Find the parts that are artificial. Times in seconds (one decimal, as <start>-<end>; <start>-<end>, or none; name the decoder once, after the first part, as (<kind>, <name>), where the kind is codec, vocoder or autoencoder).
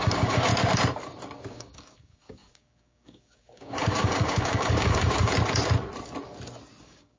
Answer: 0.0-0.5 (codec, DAC); 1.5-5.3; 6.8-7.2